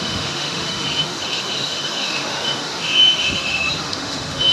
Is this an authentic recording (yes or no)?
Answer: no